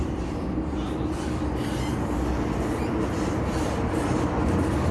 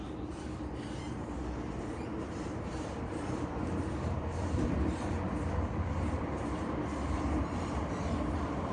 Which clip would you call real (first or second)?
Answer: first